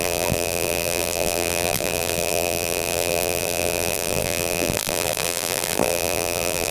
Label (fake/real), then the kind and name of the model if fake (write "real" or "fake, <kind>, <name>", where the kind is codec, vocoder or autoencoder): fake, vocoder, BigVGAN v2